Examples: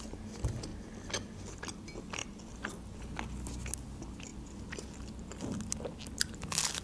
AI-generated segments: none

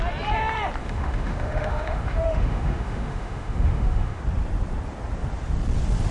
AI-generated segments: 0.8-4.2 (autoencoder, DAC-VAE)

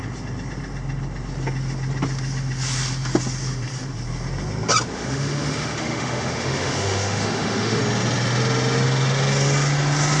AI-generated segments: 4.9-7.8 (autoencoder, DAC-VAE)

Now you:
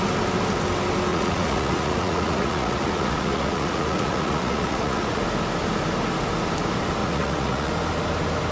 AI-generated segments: 1.1-5.2 (vocoder, Vocos); 7.0-7.7

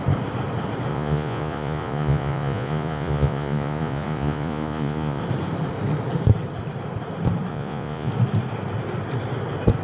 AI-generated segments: 0.9-5.2 (vocoder, Vocos); 7.5-8.1